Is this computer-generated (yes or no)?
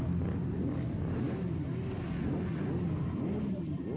no